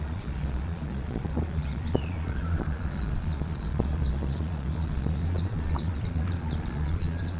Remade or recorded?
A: remade